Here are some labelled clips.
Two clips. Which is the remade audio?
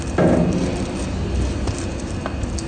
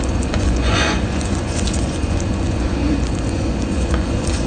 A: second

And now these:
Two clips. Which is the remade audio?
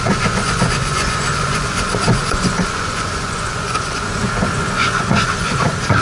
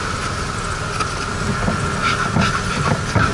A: first